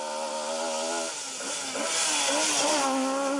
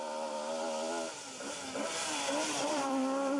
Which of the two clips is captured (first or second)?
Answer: first